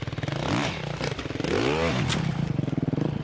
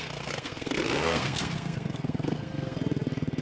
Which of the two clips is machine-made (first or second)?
second